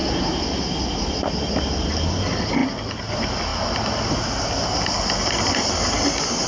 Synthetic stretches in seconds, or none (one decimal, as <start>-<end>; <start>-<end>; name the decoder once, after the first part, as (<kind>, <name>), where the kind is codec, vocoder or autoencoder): 2.6-3.1 (vocoder, BigVGAN v2)